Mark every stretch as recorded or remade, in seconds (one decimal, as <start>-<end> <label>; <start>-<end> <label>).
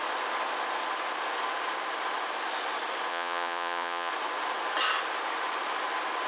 0.0-3.1 recorded; 3.1-4.1 remade; 4.1-6.3 recorded